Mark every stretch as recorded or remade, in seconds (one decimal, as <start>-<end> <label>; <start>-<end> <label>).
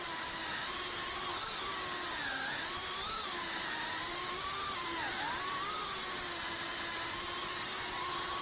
0.0-0.4 recorded; 0.4-1.7 remade; 1.7-2.8 recorded; 2.8-5.6 remade; 5.6-8.4 recorded